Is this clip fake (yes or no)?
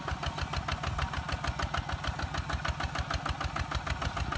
no